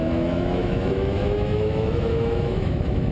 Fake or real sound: fake